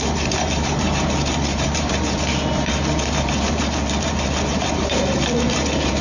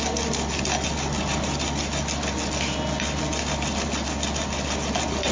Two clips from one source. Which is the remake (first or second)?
first